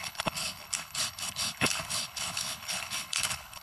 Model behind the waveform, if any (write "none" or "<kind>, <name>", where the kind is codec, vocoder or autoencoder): codec, HILCodec